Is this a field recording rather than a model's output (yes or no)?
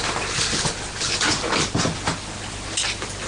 yes